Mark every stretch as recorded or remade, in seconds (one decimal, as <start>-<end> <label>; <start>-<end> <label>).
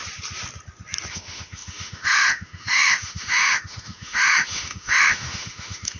0.0-1.1 recorded; 1.1-6.0 remade